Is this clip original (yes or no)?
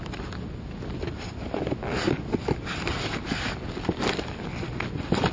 yes